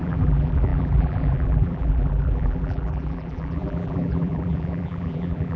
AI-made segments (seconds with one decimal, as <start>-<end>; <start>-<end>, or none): 0.0-5.6